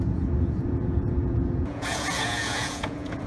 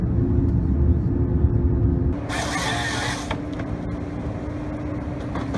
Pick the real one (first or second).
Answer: second